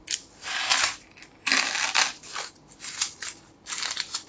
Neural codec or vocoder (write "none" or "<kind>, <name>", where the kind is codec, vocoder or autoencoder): none